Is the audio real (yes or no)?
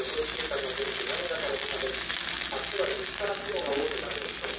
yes